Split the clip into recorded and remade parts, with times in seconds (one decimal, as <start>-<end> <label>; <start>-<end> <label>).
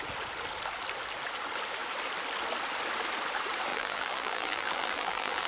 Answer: 0.0-3.7 recorded; 3.7-5.5 remade